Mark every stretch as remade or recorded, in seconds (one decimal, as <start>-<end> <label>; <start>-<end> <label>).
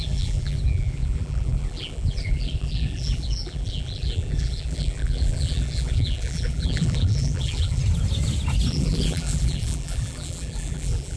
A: 0.0-7.8 remade; 7.8-8.7 recorded; 8.7-11.2 remade